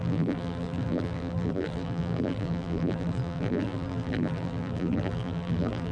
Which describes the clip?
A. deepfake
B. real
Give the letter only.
A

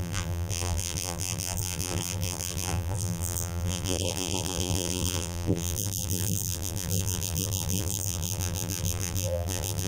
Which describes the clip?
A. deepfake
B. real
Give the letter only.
A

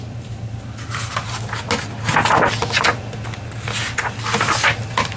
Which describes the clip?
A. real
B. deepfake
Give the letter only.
A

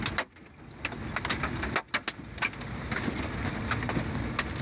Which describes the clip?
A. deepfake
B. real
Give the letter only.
B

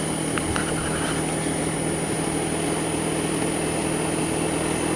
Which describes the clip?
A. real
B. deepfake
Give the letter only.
A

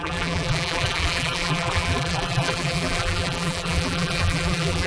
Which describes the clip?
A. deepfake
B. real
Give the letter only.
A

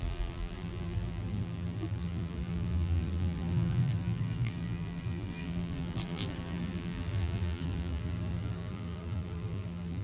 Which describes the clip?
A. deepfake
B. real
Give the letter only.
A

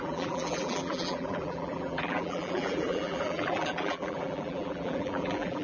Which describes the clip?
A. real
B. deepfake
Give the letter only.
B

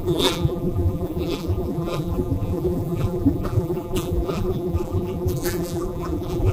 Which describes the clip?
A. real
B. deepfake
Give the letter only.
B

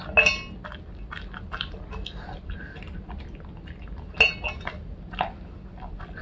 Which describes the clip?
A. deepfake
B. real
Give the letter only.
B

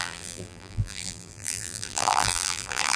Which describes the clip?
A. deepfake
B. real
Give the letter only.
A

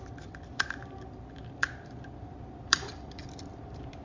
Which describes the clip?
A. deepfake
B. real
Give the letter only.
A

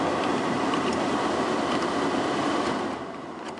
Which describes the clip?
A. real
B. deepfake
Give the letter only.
A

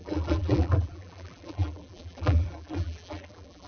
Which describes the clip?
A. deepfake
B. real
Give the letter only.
A